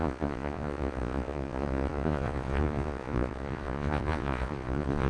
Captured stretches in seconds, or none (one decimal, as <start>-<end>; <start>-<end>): none